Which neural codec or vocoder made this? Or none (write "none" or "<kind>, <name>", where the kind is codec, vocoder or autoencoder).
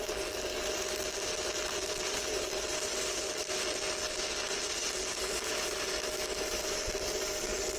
none